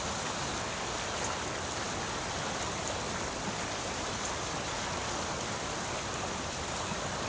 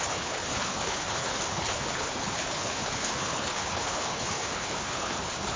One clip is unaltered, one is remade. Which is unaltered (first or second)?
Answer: first